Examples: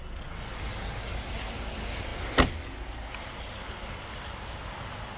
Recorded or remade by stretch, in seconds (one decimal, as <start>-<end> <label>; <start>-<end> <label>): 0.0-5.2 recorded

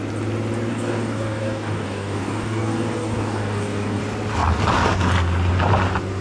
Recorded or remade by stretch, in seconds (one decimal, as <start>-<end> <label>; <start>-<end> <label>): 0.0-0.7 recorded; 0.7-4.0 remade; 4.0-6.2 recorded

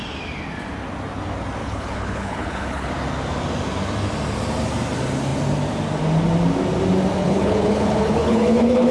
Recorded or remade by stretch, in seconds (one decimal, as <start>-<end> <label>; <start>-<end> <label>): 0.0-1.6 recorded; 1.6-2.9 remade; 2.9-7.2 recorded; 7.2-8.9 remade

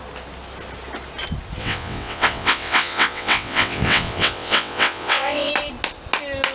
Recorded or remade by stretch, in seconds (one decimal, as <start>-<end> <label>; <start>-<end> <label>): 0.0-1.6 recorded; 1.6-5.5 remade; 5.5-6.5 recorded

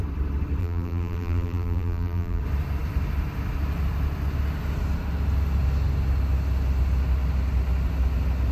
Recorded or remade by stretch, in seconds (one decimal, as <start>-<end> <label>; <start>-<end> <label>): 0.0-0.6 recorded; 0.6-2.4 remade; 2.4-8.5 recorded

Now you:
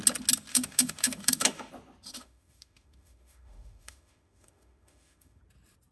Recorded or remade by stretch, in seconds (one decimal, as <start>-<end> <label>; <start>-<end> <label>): 0.0-0.5 recorded; 0.5-1.7 remade; 1.7-2.1 recorded; 2.1-5.4 remade; 5.4-5.9 recorded

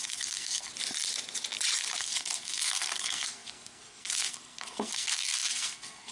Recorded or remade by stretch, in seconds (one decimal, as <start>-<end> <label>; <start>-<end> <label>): 0.0-0.7 remade; 0.7-2.0 recorded; 2.0-6.1 remade

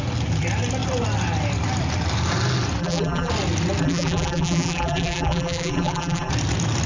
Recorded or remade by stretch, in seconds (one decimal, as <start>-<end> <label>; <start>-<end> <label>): 0.0-2.8 recorded; 2.8-3.3 remade; 3.3-3.8 recorded; 3.8-6.3 remade; 6.3-6.9 recorded